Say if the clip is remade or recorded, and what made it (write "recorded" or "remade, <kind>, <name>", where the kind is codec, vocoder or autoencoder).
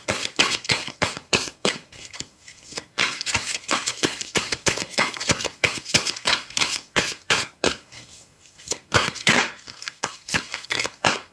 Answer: remade, codec, SNAC